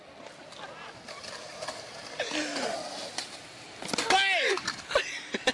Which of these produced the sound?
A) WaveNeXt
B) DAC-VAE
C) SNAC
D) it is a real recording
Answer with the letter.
D